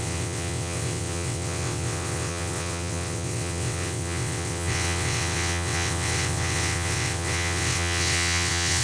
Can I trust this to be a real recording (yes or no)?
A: no